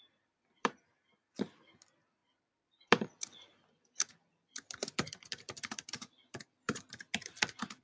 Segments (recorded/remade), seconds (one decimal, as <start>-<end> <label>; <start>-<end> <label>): 0.0-7.8 remade